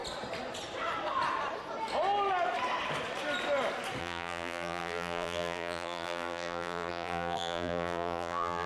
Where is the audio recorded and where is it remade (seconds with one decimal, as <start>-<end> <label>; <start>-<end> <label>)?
0.0-4.0 recorded; 4.0-8.7 remade